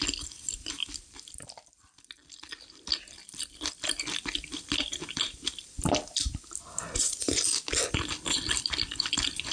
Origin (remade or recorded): recorded